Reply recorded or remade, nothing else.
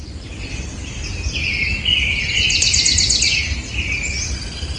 recorded